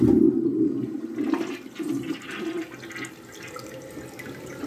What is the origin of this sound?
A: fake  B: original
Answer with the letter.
B